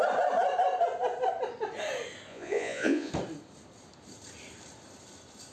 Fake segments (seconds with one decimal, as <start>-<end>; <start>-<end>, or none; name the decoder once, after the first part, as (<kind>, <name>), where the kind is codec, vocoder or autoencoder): 2.3-3.1 (vocoder, Vocos)